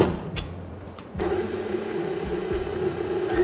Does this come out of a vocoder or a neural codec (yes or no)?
yes